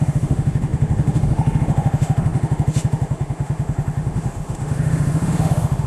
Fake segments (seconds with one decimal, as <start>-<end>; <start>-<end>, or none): 0.0-5.9